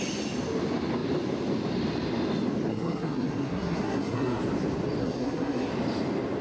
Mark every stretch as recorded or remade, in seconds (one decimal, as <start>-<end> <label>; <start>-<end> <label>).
0.0-2.7 recorded; 2.7-4.4 remade; 4.4-5.0 recorded; 5.0-5.7 remade; 5.7-6.4 recorded